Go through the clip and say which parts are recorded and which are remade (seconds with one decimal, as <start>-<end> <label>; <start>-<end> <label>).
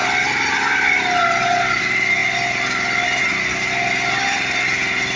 0.0-5.2 recorded